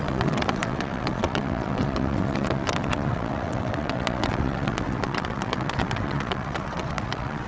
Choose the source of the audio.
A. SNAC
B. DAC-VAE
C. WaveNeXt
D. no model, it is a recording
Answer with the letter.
C